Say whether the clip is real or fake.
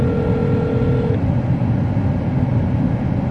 real